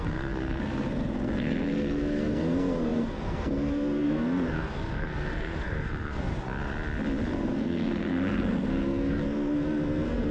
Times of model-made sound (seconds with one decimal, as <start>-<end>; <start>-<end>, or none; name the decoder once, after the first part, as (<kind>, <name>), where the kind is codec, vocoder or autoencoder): 0.0-6.3 (codec, SNAC); 7.3-10.3